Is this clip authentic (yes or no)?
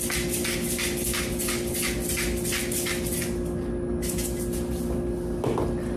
yes